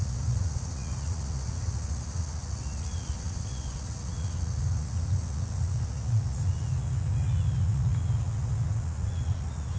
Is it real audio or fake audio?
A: fake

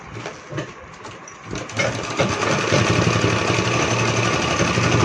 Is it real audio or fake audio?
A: real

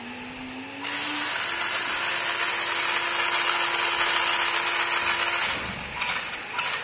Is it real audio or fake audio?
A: real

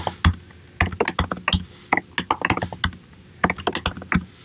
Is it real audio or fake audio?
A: real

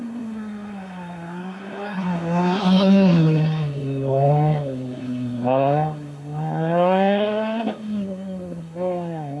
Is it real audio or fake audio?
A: fake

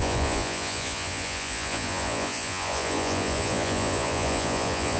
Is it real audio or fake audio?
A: fake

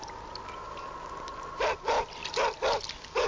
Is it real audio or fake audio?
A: real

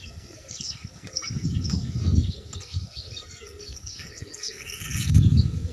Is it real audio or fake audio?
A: fake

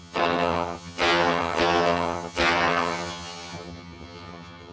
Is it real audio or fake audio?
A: fake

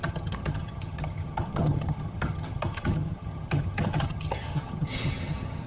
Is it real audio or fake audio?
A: fake